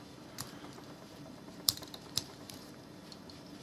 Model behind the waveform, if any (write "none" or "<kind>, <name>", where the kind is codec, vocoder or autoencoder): vocoder, BigVGAN v2